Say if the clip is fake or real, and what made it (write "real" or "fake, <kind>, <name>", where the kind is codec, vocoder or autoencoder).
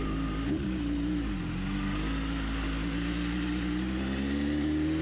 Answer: real